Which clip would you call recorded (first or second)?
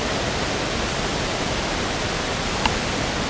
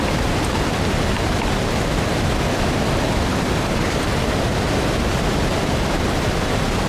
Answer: first